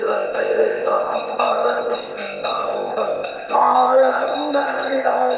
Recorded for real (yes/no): no